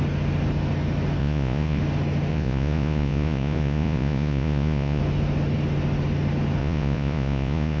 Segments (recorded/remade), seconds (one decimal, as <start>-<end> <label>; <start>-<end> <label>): 0.0-1.2 recorded; 1.2-1.8 remade; 1.8-2.3 recorded; 2.3-5.0 remade; 5.0-6.6 recorded; 6.6-7.8 remade